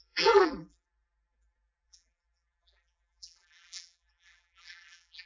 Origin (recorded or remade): remade